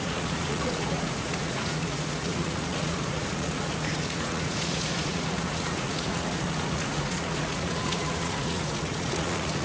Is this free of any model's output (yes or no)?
no